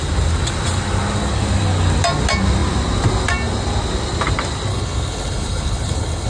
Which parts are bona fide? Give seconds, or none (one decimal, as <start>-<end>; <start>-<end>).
0.0-4.7